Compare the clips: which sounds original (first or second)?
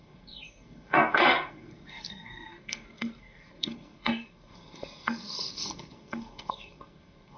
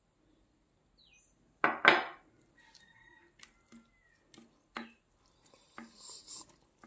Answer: second